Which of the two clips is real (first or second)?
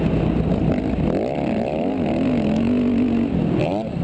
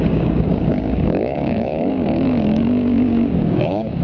first